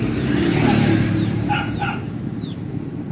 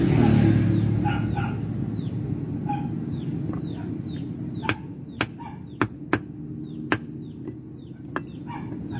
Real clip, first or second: second